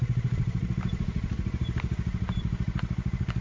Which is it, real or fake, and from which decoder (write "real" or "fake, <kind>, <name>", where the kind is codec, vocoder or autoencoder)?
real